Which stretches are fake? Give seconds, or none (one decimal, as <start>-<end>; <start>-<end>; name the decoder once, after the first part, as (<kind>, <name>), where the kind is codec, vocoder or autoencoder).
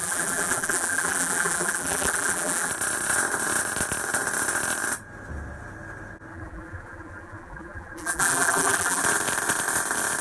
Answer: 0.0-2.7 (vocoder, BigVGAN v2); 6.3-9.0